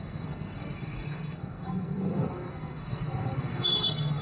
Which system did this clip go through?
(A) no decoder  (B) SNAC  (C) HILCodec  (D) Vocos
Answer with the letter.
B